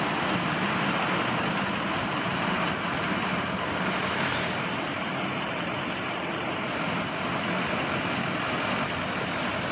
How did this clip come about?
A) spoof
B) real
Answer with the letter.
B